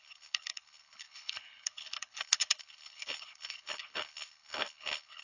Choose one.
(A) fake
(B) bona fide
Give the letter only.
A